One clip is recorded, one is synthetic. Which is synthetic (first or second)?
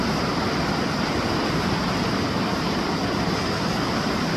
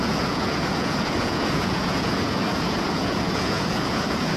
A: second